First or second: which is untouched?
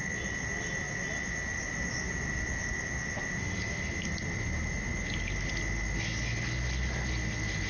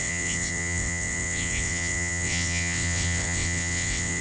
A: first